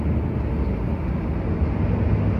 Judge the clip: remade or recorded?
recorded